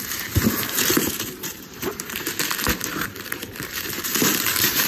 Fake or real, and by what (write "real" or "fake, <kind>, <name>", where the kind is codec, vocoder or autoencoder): fake, vocoder, BigVGAN v2